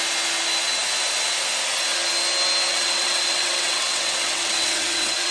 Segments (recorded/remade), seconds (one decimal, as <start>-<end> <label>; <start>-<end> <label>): 0.0-2.7 recorded; 2.7-5.3 remade